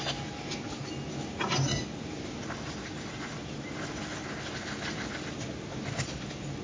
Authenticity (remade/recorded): recorded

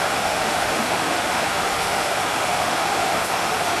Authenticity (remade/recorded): remade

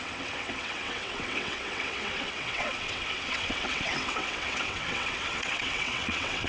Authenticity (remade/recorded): remade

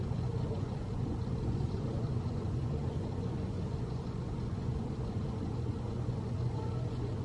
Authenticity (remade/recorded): remade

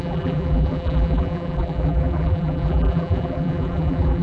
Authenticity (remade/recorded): remade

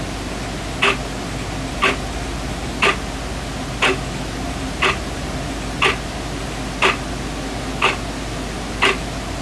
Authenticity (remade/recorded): recorded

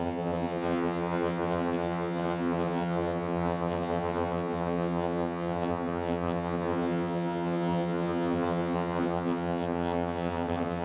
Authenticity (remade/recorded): remade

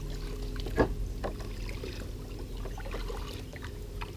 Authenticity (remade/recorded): recorded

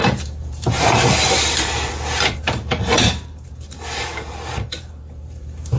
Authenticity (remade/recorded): remade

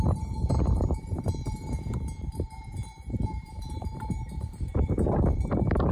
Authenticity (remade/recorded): remade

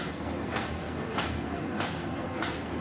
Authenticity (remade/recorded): remade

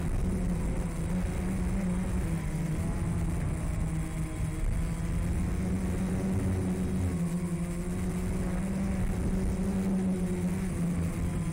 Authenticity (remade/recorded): recorded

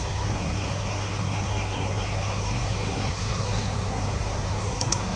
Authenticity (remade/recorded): remade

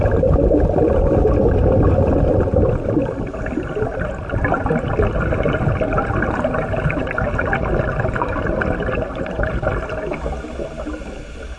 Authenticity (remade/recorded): recorded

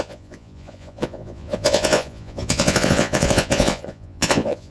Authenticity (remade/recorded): remade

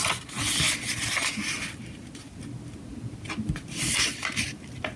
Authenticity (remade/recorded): recorded